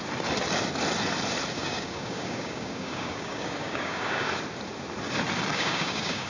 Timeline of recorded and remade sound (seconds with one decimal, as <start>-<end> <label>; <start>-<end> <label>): 0.0-1.5 recorded; 1.5-4.3 remade; 4.3-5.5 recorded; 5.5-6.3 remade

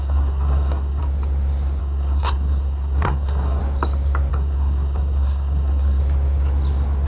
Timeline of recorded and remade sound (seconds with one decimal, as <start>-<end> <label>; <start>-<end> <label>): 0.0-1.0 remade; 1.0-1.8 recorded; 1.8-3.6 remade; 3.6-4.3 recorded; 4.3-6.0 remade; 6.0-7.1 recorded

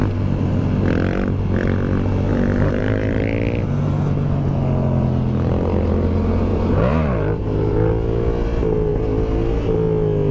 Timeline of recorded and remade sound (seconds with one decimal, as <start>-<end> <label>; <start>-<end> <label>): 0.0-2.3 recorded; 2.3-3.2 remade; 3.2-6.5 recorded; 6.5-7.9 remade; 7.9-10.3 recorded

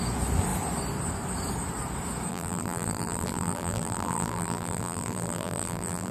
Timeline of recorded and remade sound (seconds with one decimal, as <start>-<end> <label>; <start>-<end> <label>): 0.0-2.3 recorded; 2.3-6.1 remade

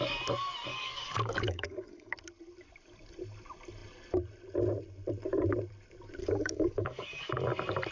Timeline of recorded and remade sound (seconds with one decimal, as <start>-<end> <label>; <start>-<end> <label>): 0.0-0.7 recorded; 0.7-2.1 remade; 2.1-6.2 recorded; 6.2-7.3 remade; 7.3-7.9 recorded

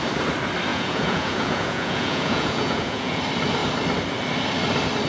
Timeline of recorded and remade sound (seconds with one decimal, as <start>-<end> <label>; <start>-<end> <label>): 0.0-0.7 recorded; 0.7-3.2 remade; 3.2-5.1 recorded